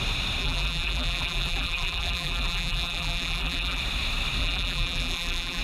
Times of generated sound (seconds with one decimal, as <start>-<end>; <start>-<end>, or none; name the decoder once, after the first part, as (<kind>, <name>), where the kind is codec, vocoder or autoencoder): 0.4-3.8 (vocoder, BigVGAN v2); 4.4-5.6